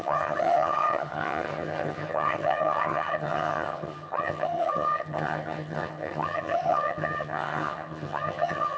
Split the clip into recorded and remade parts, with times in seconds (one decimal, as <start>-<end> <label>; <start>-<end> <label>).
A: 0.0-8.8 remade